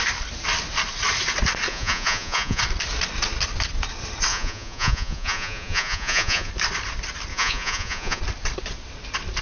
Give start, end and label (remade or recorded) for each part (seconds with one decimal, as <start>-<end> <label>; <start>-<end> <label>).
0.0-1.7 recorded; 1.7-2.6 remade; 2.6-4.3 recorded; 4.3-6.5 remade; 6.5-7.3 recorded; 7.3-8.2 remade; 8.2-9.4 recorded